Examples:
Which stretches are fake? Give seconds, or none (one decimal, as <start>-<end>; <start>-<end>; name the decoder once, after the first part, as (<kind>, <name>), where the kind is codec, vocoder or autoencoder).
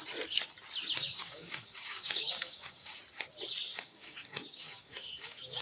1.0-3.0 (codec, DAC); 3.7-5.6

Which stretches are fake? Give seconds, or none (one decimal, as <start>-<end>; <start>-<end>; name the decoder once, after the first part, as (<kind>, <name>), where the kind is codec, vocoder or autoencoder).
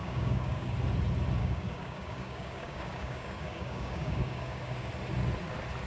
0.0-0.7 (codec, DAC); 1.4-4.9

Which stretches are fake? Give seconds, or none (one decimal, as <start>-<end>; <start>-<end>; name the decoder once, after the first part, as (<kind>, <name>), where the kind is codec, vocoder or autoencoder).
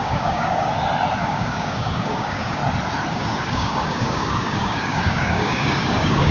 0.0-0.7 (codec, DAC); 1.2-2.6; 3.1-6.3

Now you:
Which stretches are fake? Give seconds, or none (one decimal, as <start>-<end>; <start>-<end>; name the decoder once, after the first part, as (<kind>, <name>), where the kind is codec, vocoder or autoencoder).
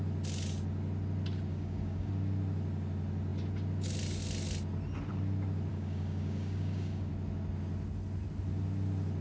1.5-2.1 (codec, DAC); 5.7-7.1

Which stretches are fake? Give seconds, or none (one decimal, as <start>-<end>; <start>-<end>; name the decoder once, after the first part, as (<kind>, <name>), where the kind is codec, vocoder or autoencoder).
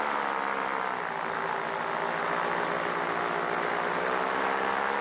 none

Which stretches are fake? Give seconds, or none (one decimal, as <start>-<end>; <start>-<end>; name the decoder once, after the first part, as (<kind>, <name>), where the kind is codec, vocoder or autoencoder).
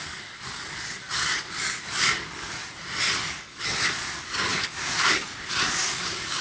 0.0-2.6 (codec, DAC); 3.2-6.4